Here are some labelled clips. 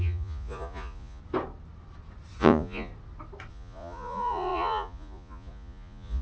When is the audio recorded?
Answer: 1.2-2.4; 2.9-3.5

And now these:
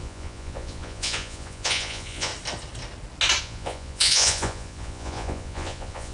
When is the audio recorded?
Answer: 2.3-3.4

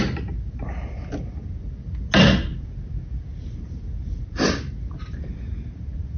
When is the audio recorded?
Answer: 0.0-6.2

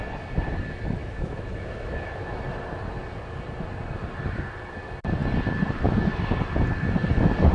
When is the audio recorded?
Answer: 0.0-1.0; 2.4-7.5